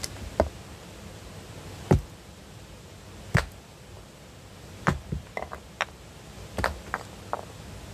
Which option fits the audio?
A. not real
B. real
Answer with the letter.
B